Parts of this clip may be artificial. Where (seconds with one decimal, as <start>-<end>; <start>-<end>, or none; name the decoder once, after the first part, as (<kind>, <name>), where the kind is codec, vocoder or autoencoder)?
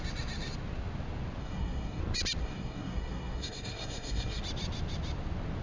1.4-2.0 (codec, SNAC); 2.4-4.4